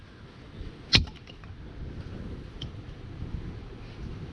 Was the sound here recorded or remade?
recorded